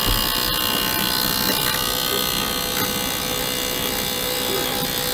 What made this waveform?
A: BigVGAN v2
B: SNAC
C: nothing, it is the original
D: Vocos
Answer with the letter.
C